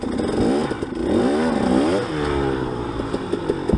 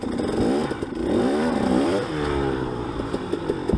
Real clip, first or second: first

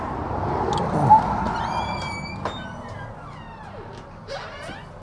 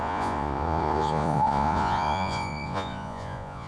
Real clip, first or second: first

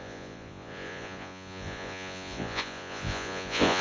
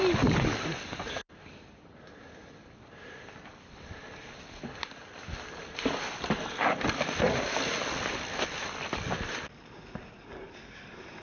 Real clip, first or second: second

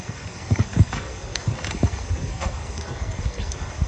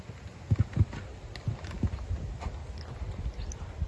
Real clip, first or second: second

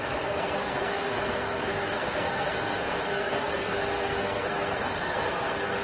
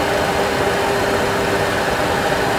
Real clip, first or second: second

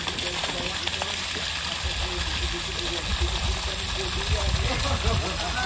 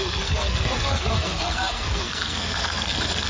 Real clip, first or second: first